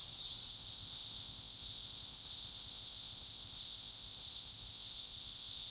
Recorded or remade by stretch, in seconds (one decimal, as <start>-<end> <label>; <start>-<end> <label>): 0.0-0.5 recorded; 0.5-5.7 remade